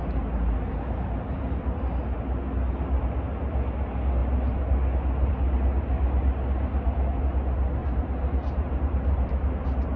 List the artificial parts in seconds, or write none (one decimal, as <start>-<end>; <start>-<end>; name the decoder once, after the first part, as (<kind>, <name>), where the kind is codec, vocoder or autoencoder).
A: 7.8-9.6 (vocoder, BigVGAN v2)